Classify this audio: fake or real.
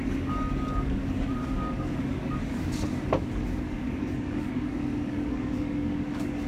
fake